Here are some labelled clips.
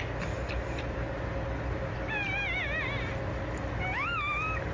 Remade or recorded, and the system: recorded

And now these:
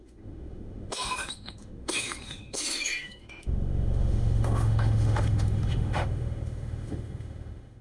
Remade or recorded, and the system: remade, autoencoder, DAC-VAE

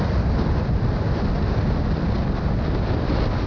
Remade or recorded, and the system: recorded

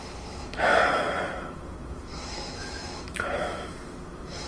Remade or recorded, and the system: remade, autoencoder, DAC-VAE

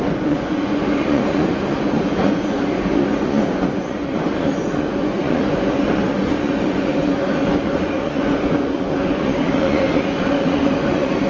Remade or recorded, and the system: remade, vocoder, Vocos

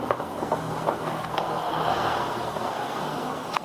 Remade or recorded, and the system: remade, codec, SNAC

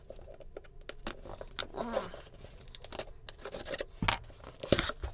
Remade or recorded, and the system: recorded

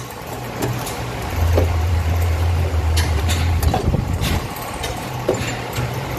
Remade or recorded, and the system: remade, vocoder, BigVGAN v2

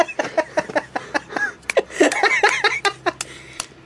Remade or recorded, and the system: recorded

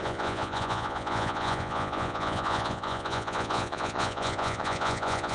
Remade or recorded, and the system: remade, vocoder, Vocos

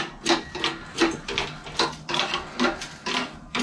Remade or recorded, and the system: recorded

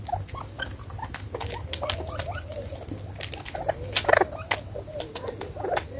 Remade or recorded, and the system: recorded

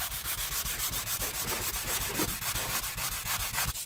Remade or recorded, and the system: recorded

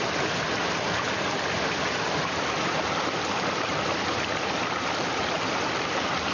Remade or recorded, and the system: recorded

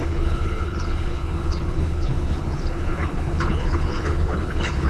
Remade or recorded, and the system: remade, codec, HILCodec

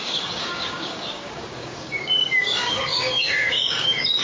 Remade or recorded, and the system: remade, codec, DAC